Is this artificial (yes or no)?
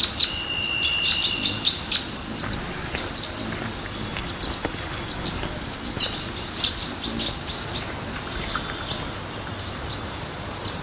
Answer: no